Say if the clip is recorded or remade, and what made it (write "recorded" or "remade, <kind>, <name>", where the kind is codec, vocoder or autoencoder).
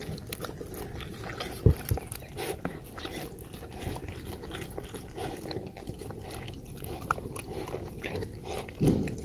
recorded